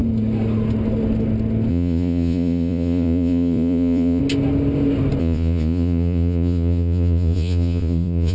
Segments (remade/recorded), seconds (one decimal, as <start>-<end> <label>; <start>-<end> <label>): 0.0-1.7 recorded; 1.7-4.2 remade; 4.2-5.2 recorded; 5.2-8.3 remade